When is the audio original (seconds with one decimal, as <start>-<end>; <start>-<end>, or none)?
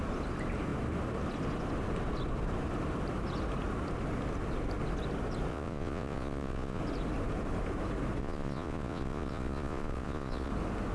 0.0-5.5; 6.8-8.2; 10.5-10.9